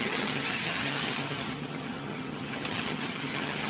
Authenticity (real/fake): fake